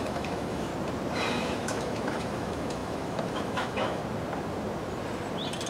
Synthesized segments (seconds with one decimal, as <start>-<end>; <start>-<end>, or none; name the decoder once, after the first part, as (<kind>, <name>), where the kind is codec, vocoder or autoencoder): 0.0-0.7 (autoencoder, DAC-VAE); 1.3-4.0